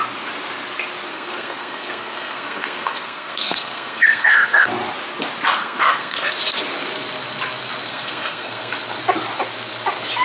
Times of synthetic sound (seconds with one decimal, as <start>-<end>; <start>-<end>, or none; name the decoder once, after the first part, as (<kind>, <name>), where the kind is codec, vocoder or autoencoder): 1.1-4.7 (codec, SNAC); 5.6-6.3; 7.9-8.7